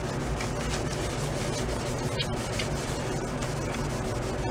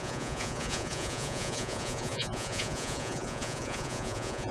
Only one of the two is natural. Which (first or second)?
first